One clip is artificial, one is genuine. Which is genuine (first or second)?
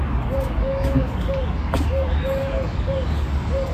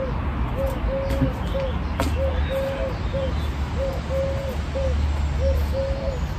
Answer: second